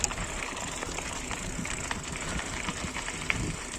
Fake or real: real